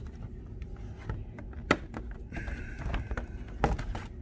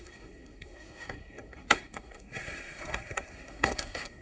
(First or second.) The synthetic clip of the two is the second